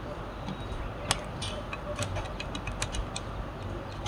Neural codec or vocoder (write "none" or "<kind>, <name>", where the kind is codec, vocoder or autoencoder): none